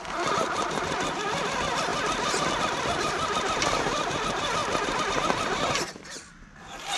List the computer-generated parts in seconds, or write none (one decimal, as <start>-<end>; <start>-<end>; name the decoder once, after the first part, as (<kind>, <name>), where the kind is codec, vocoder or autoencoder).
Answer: none